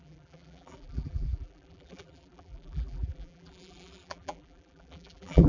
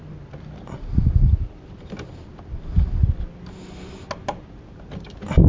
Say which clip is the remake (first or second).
first